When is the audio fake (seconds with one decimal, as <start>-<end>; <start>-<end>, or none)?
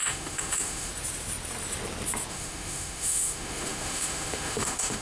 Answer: 0.0-0.9; 2.3-5.0